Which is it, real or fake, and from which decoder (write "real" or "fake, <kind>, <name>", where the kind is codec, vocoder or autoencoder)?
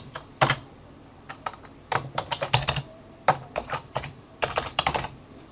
fake, vocoder, BigVGAN v2